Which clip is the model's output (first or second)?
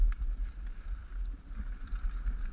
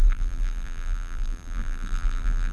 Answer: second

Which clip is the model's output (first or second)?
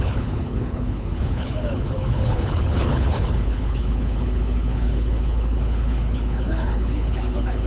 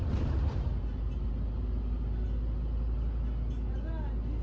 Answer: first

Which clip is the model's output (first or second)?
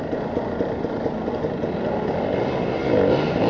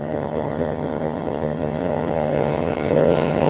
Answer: second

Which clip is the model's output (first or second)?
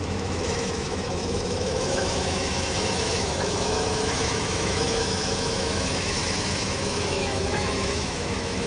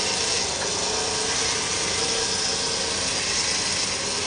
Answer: first